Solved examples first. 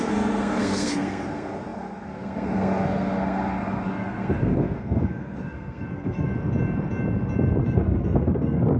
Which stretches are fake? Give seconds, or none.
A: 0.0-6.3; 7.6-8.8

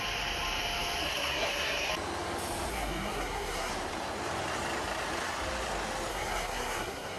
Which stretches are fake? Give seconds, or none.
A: 1.0-1.9; 2.7-3.7; 6.1-7.2

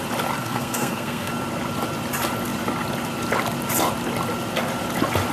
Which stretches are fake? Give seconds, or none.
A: 0.4-1.3

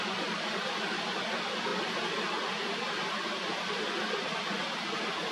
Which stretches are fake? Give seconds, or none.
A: none